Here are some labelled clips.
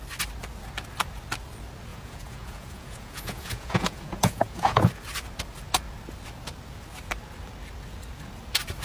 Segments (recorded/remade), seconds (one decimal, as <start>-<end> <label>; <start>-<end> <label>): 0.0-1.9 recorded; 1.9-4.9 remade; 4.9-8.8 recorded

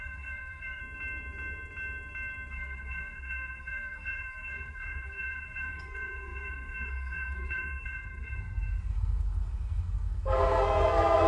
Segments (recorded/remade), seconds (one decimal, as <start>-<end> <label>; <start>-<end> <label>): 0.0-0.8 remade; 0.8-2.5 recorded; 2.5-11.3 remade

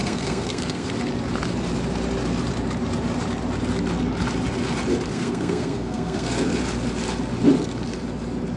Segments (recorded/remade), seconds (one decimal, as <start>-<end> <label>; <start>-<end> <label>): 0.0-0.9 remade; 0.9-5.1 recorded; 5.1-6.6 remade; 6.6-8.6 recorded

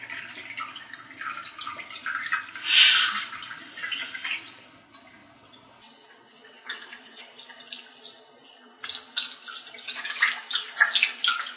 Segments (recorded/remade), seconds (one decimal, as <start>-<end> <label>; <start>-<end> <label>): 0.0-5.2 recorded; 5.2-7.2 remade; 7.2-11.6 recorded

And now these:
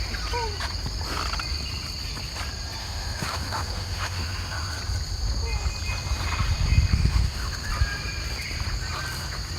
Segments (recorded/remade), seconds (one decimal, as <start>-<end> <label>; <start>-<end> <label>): 0.0-2.8 recorded; 2.8-4.8 remade; 4.8-6.9 recorded; 6.9-7.7 remade; 7.7-9.6 recorded

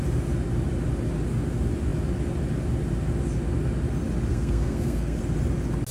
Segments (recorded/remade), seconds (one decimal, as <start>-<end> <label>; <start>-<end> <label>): 0.0-4.3 recorded; 4.3-5.2 remade; 5.2-5.9 recorded